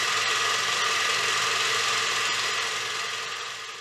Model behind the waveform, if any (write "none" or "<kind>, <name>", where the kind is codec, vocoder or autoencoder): none